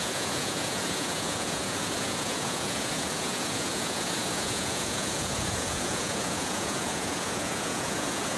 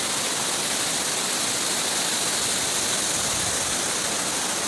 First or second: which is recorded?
second